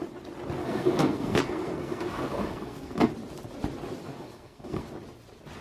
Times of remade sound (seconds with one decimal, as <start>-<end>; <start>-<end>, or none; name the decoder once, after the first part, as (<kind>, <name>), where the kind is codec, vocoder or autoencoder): 0.6-3.1 (codec, SNAC); 4.0-4.9